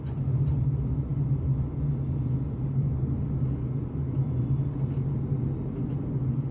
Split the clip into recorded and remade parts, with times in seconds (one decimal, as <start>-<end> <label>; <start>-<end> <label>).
0.0-6.5 recorded

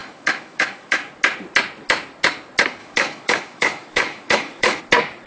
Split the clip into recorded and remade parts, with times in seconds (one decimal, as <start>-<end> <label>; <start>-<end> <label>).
0.0-1.1 remade; 1.1-2.8 recorded; 2.8-4.8 remade; 4.8-5.3 recorded

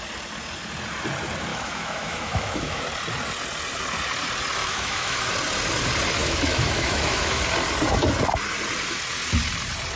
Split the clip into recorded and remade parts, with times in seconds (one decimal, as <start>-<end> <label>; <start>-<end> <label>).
0.0-1.5 recorded; 1.5-2.8 remade; 2.8-4.6 recorded; 4.6-5.3 remade; 5.3-6.2 recorded; 6.2-7.4 remade; 7.4-10.0 recorded

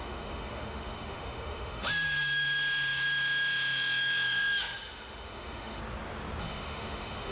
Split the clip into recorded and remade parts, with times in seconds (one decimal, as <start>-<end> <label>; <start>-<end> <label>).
0.0-5.8 remade; 5.8-6.4 recorded; 6.4-7.3 remade

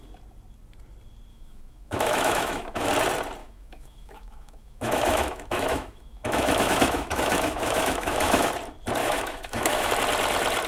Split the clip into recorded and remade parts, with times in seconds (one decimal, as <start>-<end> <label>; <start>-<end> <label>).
0.0-1.3 recorded; 1.3-2.9 remade; 2.9-3.4 recorded; 3.4-8.5 remade; 8.5-9.0 recorded; 9.0-9.9 remade; 9.9-10.7 recorded

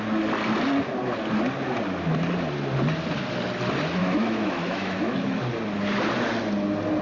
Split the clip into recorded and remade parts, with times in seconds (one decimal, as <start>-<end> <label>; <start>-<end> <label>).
0.0-4.0 recorded; 4.0-5.4 remade; 5.4-7.0 recorded

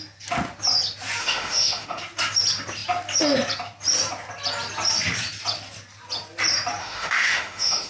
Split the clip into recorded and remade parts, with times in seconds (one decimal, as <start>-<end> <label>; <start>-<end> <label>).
0.0-1.2 recorded; 1.2-2.0 remade; 2.0-6.8 recorded; 6.8-7.9 remade